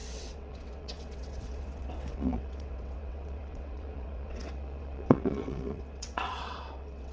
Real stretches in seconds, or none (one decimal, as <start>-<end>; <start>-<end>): none